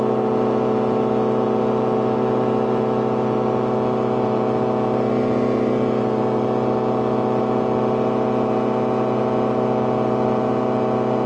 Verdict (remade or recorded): recorded